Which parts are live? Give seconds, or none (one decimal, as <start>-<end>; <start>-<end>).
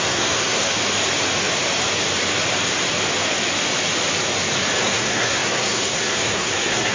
0.7-4.8